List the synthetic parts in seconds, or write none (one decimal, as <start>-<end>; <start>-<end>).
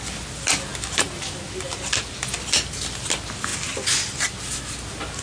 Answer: none